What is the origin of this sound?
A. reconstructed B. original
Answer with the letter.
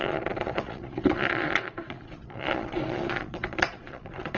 A